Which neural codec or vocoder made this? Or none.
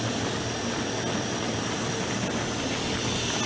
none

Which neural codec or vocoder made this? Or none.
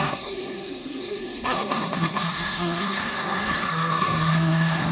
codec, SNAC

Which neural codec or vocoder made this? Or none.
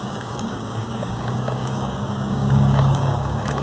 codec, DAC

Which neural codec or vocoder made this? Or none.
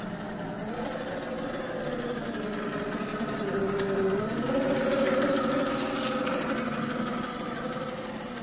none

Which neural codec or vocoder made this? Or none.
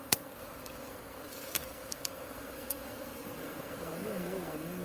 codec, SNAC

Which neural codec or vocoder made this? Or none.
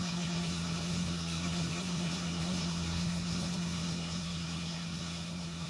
codec, SNAC